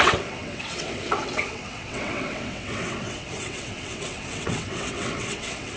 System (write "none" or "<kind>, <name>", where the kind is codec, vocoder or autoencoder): vocoder, WaveNeXt